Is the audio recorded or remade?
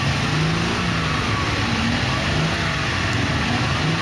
recorded